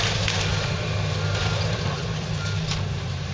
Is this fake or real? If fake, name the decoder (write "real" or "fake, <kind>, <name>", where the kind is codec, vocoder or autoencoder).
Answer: fake, vocoder, BigVGAN v2